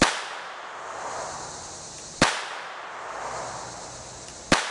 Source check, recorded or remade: recorded